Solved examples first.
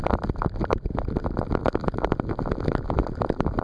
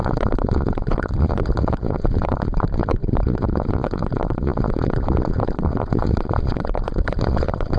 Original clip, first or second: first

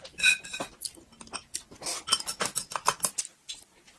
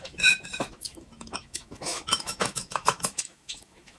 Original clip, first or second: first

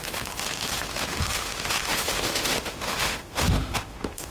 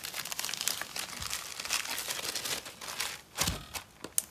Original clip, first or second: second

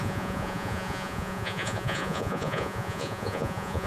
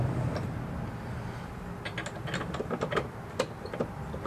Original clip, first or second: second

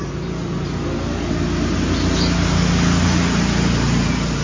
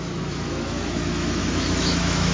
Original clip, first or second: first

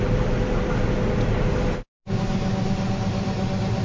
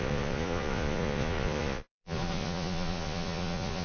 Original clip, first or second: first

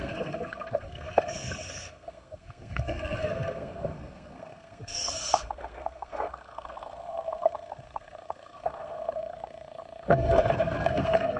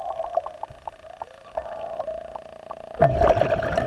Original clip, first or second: second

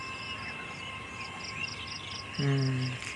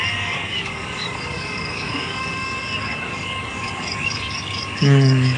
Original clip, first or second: first